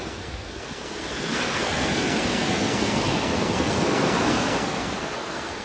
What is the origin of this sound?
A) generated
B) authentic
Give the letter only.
A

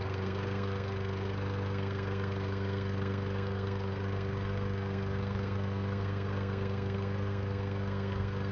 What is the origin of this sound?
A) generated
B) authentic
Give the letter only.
A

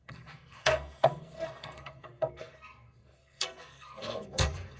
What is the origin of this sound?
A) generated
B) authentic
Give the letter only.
A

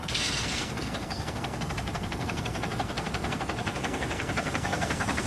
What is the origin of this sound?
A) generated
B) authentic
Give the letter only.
A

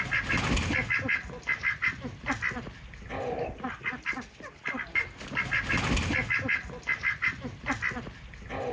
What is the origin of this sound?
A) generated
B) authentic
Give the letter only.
B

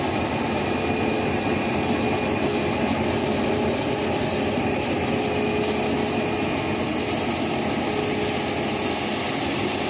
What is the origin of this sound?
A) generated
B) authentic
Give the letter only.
B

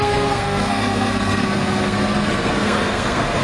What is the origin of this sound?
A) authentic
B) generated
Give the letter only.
B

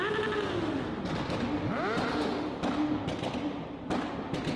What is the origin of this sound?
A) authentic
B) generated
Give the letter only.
A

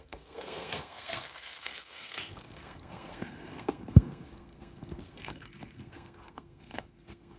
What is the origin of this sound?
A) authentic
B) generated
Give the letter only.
B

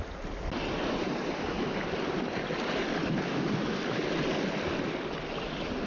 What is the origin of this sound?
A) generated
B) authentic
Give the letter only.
B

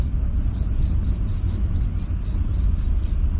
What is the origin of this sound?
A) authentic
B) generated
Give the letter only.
A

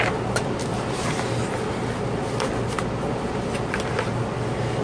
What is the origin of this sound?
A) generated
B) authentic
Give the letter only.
B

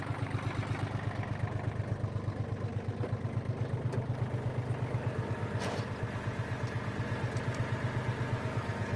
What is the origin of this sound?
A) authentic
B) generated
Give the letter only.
A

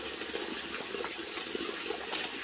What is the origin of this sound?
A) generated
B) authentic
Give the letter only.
B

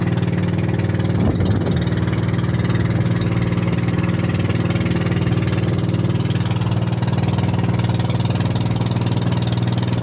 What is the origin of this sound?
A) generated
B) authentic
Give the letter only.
B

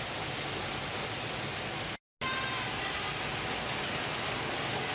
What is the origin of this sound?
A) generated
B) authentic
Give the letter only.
B